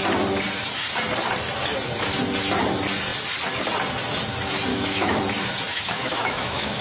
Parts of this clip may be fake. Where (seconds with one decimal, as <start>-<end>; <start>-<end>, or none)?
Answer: 4.7-5.2; 5.7-6.8